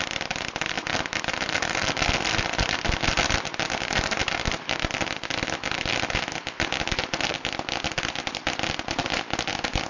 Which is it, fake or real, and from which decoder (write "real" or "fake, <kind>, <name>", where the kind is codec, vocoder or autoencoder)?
real